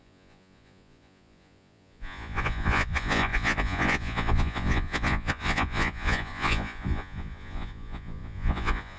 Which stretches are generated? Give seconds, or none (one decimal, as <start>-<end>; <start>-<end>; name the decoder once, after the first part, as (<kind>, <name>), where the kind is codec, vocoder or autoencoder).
0.0-9.0 (vocoder, Vocos)

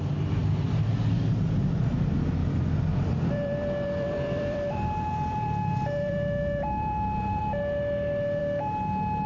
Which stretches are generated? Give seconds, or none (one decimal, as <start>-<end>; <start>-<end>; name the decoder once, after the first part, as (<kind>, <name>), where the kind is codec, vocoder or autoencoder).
0.4-1.0 (vocoder, BigVGAN v2); 2.4-7.4

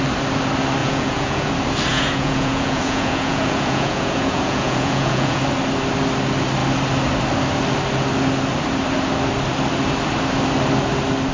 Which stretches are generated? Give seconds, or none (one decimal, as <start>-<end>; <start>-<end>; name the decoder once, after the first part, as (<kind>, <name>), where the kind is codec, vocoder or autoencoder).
0.8-1.5 (vocoder, Vocos); 1.9-5.4

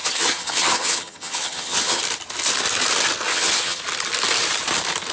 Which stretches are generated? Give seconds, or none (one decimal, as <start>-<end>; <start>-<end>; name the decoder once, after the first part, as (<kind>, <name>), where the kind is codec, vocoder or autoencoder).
0.0-2.0 (vocoder, HiFi-GAN); 3.3-3.8

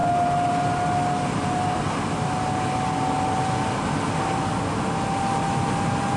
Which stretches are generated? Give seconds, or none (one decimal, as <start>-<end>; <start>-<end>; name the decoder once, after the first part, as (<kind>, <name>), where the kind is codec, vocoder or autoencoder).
none

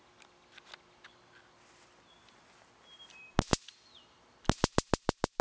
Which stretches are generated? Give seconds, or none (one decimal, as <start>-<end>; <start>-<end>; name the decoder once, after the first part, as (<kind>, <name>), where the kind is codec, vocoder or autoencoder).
none